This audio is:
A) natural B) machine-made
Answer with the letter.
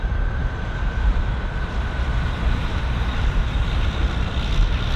B